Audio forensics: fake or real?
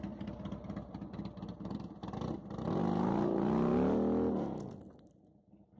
real